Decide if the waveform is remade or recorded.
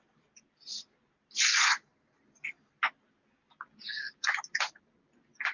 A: recorded